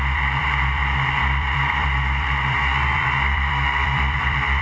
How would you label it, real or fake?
fake